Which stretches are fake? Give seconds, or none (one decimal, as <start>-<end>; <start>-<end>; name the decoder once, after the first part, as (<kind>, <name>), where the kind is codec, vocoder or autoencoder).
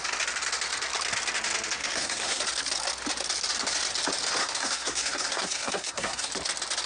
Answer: 1.8-2.4 (codec, SNAC); 4.4-6.3